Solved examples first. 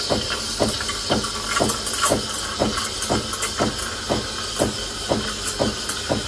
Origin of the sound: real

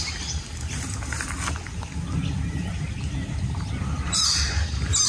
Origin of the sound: real